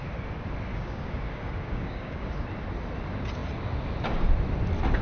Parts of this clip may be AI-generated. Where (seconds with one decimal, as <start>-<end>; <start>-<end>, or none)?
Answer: 0.7-2.3